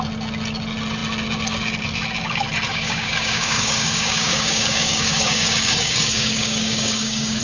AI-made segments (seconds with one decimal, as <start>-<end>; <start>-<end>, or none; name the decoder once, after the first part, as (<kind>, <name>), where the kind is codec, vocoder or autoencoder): 2.7-7.4 (codec, DAC)